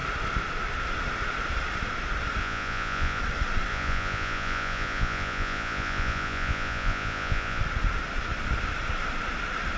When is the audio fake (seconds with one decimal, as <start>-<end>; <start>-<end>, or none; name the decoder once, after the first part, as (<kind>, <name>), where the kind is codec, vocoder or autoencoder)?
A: 2.4-3.2 (vocoder, Vocos); 3.7-7.6